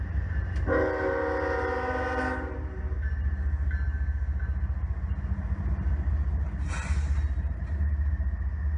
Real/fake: real